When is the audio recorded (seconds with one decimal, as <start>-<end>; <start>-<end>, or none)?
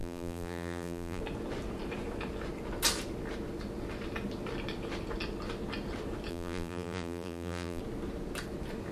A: 1.2-6.3; 7.8-8.9